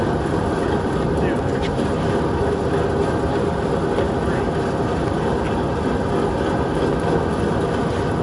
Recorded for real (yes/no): yes